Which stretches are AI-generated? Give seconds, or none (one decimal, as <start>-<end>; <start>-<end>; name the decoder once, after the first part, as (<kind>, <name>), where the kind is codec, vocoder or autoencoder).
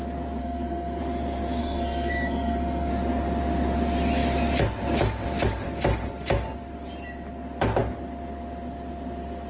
0.4-1.0 (codec, SNAC); 1.6-2.9